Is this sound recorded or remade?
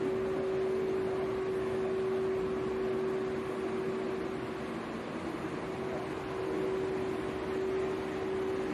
recorded